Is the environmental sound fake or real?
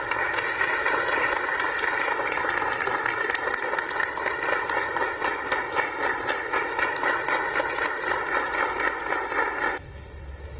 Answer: real